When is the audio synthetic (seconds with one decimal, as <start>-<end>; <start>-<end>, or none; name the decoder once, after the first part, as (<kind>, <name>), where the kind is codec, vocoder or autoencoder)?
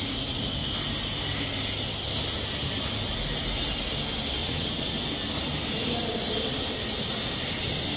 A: 4.4-5.0 (vocoder, WaveNeXt)